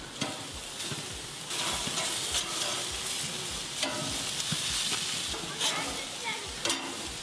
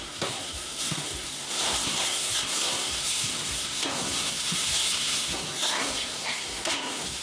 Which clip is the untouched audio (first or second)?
first